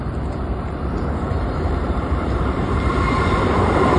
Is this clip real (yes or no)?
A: no